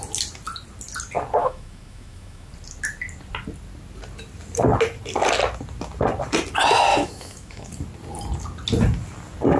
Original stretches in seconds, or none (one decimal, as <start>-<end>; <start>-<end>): 0.0-1.4; 2.5-6.9; 7.7-9.6